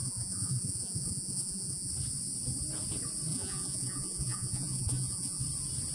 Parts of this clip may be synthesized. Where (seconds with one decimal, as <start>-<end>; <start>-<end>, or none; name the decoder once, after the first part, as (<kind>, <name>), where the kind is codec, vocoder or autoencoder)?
0.0-1.9 (vocoder, Vocos); 3.3-5.4